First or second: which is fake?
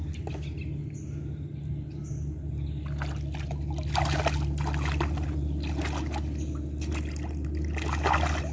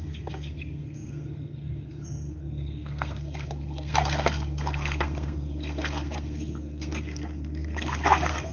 second